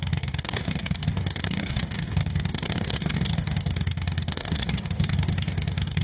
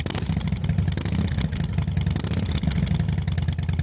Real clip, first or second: second